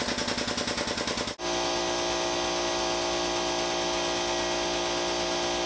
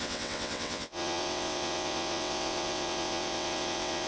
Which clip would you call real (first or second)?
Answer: first